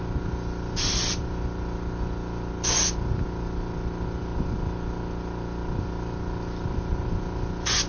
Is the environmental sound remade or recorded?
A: recorded